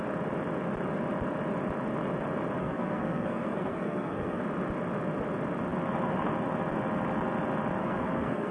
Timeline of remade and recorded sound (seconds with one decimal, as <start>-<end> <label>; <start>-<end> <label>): 0.0-2.6 recorded; 2.6-4.4 remade; 4.4-7.8 recorded; 7.8-8.5 remade